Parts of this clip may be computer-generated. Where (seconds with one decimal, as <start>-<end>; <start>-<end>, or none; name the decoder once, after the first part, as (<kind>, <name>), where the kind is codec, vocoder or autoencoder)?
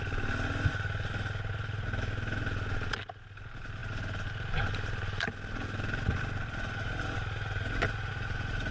none